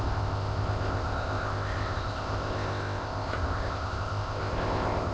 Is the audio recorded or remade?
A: remade